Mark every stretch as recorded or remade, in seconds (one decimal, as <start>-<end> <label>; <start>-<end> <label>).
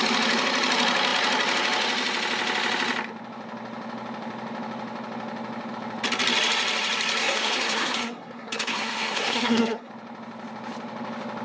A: 0.0-7.2 recorded; 7.2-9.9 remade; 9.9-11.4 recorded